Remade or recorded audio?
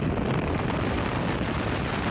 remade